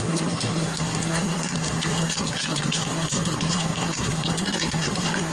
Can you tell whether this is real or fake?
fake